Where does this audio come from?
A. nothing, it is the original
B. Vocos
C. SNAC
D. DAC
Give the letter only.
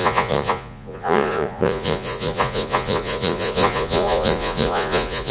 B